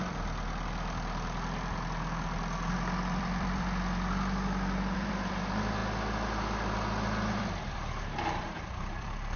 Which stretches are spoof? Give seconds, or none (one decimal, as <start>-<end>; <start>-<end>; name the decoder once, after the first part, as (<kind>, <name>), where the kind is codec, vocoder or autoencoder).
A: 0.0-5.8 (vocoder, BigVGAN v2); 7.3-9.4